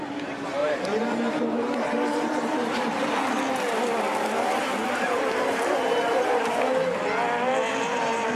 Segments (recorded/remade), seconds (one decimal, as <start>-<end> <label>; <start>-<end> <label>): 0.0-0.6 recorded; 0.6-3.4 remade; 3.4-4.1 recorded; 4.1-6.5 remade; 6.5-8.3 recorded